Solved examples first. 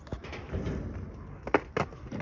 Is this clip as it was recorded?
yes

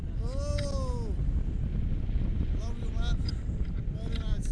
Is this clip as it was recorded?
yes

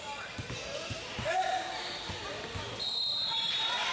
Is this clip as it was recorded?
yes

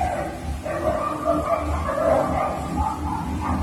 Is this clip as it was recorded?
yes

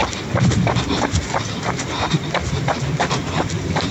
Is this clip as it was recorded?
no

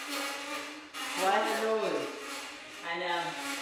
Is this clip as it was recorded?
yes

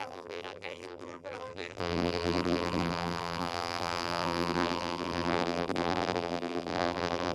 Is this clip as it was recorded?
no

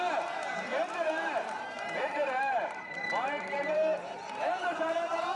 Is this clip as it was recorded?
no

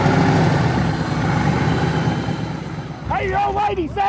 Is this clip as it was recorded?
yes